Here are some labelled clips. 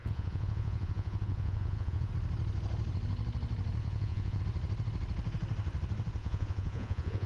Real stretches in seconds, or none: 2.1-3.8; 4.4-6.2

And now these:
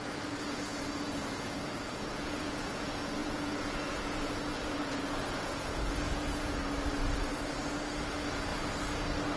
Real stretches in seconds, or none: 6.6-8.1; 8.5-9.4

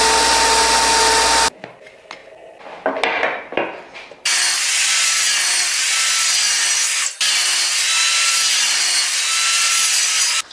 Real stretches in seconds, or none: 0.0-10.5

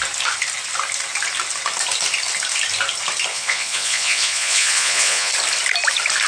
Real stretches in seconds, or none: 0.0-3.3; 5.3-6.3

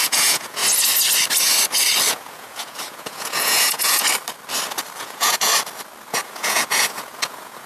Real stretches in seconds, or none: 0.6-2.1; 4.1-5.0; 5.5-6.1

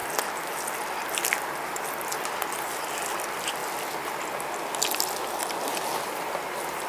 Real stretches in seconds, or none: 0.0-6.9